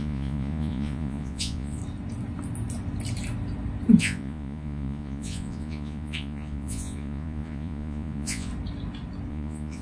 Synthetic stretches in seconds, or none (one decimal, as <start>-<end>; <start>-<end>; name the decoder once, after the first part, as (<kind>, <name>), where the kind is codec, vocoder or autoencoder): 0.0-1.8 (vocoder, Vocos); 4.0-8.5; 9.3-9.8